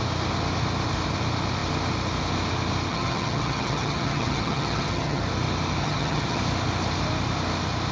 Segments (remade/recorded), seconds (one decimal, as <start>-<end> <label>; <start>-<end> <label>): 0.0-2.9 recorded; 2.9-5.2 remade; 5.2-5.8 recorded; 5.8-6.4 remade; 6.4-7.9 recorded